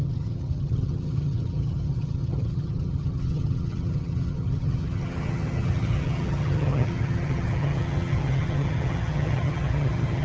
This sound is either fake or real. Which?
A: fake